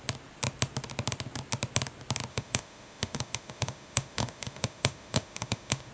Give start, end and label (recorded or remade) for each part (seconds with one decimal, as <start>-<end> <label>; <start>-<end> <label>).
0.0-2.3 recorded; 2.3-5.9 remade